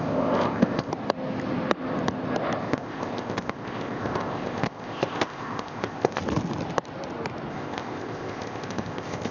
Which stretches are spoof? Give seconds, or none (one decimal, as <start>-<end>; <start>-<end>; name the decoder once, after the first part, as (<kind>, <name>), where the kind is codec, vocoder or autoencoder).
0.0-0.9 (codec, ZipCodec); 2.6-6.2; 7.5-9.3